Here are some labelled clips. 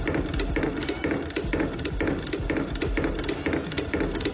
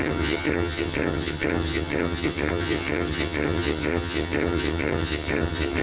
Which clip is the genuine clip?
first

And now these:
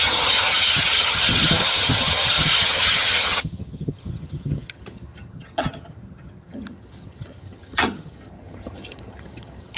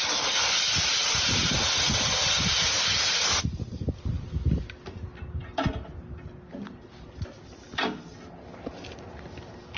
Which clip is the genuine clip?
second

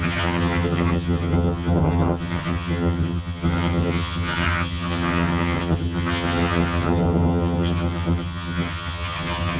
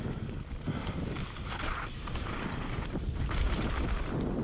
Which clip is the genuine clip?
second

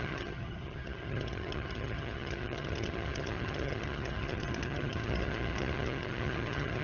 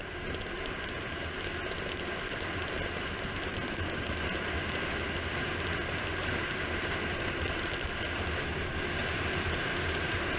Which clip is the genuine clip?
second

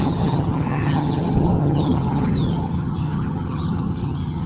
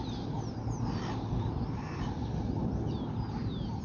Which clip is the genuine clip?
second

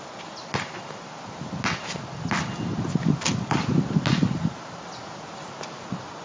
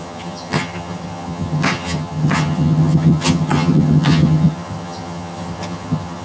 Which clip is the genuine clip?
first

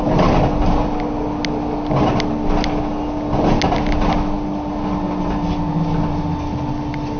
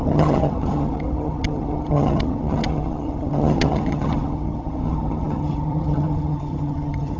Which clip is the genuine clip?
first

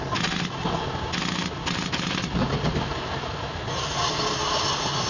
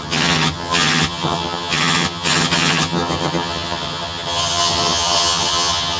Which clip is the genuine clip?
first